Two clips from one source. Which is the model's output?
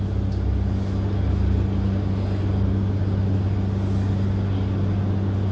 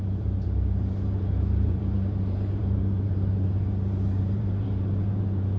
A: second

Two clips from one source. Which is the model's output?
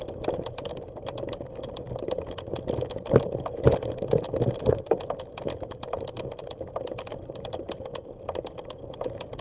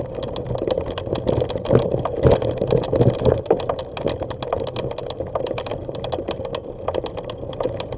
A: first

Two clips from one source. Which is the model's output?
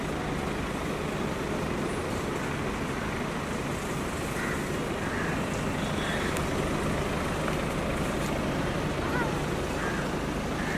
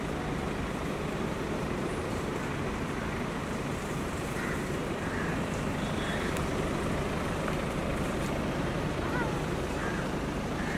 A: second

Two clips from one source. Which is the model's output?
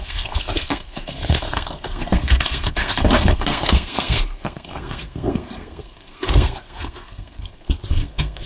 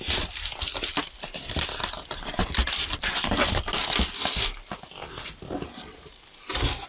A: first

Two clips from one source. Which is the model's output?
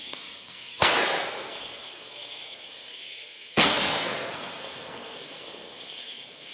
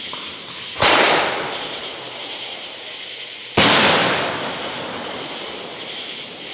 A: first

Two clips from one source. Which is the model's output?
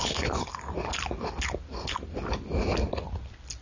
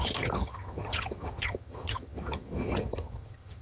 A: second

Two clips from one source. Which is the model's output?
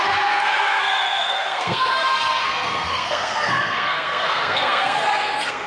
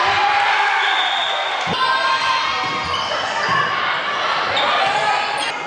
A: first